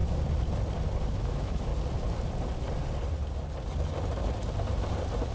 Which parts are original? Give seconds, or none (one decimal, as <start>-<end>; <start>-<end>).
0.0-1.0; 1.7-5.3